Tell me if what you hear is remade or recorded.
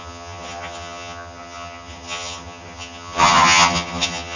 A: remade